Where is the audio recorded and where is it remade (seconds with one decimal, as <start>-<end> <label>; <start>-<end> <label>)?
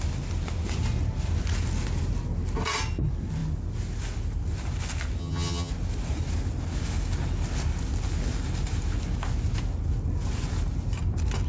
0.0-5.2 recorded; 5.2-5.7 remade; 5.7-11.5 recorded